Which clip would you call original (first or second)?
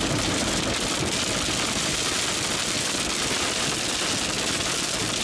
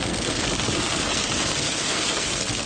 first